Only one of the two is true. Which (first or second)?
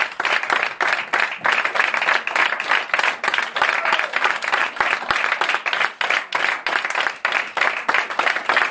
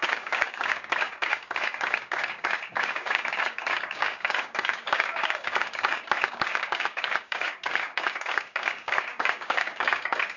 first